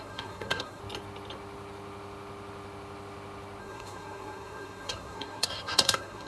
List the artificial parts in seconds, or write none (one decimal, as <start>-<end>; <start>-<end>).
0.0-0.8; 3.6-6.3